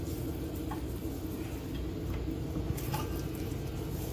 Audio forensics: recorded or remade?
recorded